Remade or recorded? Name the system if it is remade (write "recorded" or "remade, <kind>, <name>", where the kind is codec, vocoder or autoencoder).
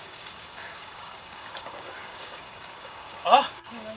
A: remade, codec, DAC